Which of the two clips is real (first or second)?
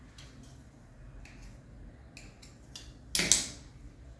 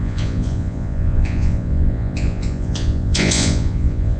first